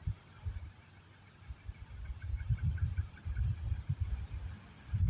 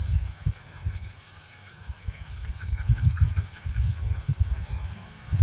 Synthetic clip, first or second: second